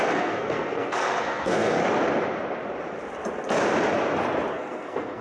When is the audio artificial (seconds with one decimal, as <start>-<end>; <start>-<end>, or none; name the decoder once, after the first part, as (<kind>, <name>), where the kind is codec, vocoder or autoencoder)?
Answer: 0.0-1.8 (codec, SNAC); 4.5-5.2